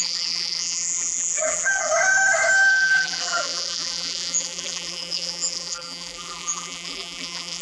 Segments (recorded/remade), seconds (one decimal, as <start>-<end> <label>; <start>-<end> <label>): 0.0-1.9 remade; 1.9-2.7 recorded; 2.7-7.6 remade

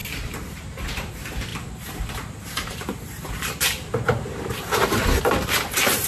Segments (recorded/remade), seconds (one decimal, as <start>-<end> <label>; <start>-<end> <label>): 0.0-6.1 remade